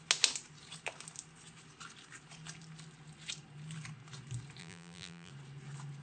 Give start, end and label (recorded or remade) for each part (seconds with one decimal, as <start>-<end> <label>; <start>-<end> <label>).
0.0-4.6 recorded; 4.6-5.3 remade; 5.3-6.0 recorded